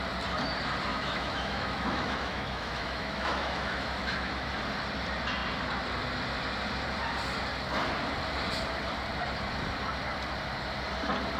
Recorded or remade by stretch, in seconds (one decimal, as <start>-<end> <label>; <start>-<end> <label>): 0.0-0.9 recorded; 0.9-4.5 remade; 4.5-11.4 recorded